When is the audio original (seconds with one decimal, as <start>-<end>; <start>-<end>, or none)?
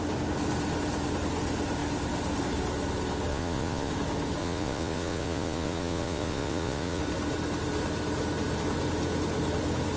0.0-3.3; 3.9-4.4; 7.0-10.0